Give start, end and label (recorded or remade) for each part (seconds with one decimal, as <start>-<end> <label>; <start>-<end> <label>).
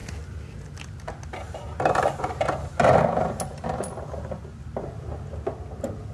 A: 0.0-6.1 recorded